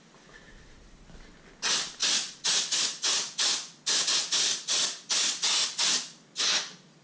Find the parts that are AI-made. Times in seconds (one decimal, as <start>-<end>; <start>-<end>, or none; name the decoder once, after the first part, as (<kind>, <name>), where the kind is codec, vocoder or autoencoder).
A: none